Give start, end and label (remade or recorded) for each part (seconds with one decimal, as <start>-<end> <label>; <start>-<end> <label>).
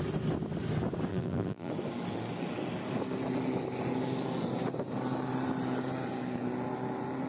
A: 0.0-1.1 recorded; 1.1-1.7 remade; 1.7-7.3 recorded